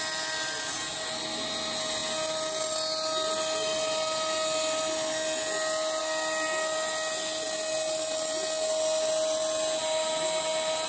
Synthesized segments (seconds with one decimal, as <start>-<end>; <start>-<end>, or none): none

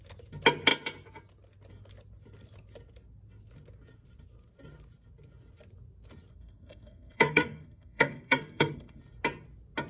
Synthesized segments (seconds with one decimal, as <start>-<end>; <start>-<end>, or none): 6.3-9.0

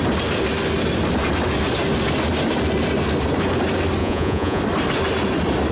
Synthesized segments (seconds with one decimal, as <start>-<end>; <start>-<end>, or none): 4.0-4.6

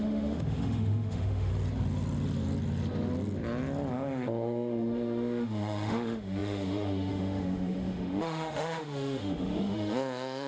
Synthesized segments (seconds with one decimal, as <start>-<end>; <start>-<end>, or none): 0.0-1.5; 3.9-10.5

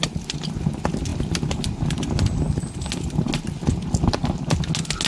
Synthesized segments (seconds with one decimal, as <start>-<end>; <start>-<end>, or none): none